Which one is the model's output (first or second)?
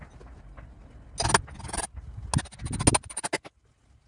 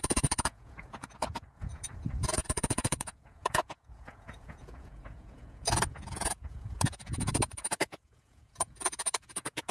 second